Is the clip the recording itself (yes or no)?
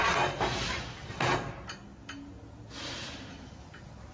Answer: yes